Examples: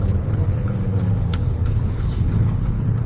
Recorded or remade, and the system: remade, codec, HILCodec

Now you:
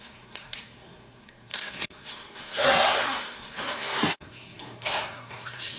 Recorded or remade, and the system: remade, codec, SNAC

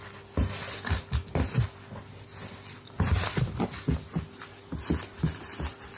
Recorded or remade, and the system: recorded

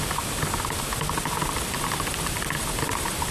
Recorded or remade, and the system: recorded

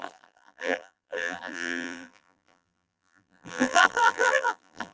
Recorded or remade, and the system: remade, vocoder, BigVGAN v2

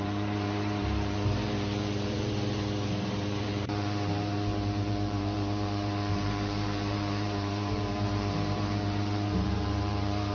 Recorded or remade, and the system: remade, vocoder, BigVGAN v2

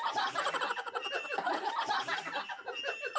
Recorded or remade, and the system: recorded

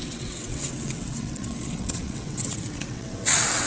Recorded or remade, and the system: remade, vocoder, WaveNeXt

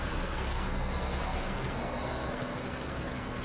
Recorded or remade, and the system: remade, codec, SNAC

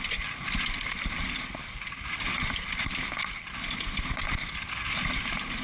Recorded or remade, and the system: recorded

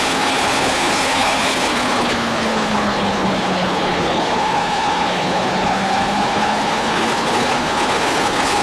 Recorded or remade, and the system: remade, codec, HILCodec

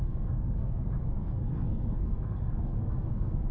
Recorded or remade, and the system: remade, codec, SNAC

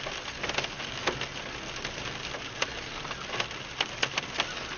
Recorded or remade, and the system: recorded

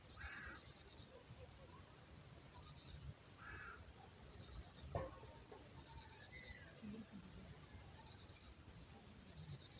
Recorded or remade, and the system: recorded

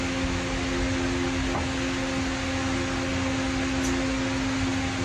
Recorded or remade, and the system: recorded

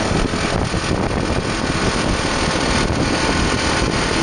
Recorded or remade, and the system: recorded